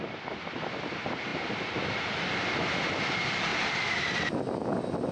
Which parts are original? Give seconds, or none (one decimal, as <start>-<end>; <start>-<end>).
0.0-3.5; 4.0-5.1